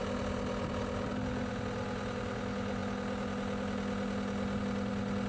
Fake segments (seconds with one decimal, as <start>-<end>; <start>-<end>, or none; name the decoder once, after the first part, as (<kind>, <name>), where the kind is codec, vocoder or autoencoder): none